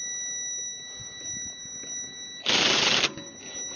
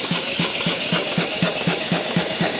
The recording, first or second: first